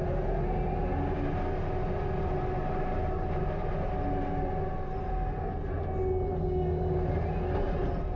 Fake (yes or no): no